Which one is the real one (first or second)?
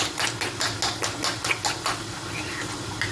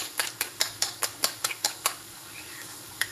first